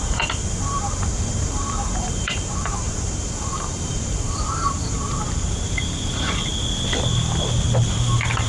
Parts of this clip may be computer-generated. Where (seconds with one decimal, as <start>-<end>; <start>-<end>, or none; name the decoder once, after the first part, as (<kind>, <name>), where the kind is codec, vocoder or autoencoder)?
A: 0.0-6.5 (vocoder, BigVGAN v2); 7.9-8.5